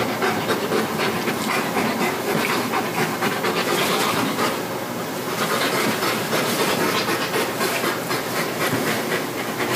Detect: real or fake real